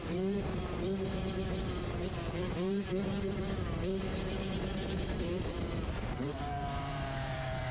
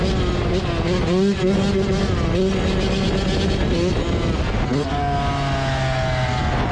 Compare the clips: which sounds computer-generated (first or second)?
first